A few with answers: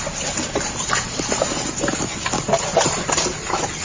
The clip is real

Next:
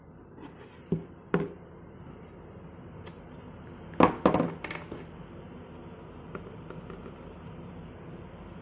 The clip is real